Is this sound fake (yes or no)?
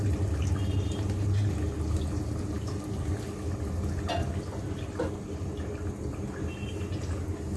no